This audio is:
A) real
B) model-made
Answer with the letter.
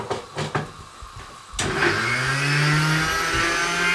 A